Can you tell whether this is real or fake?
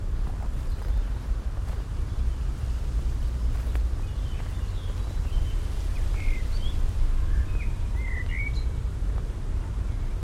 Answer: real